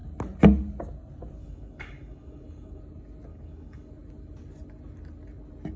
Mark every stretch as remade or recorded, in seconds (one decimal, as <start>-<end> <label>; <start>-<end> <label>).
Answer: 0.0-1.4 recorded; 1.4-2.8 remade; 2.8-3.3 recorded; 3.3-3.9 remade; 3.9-5.8 recorded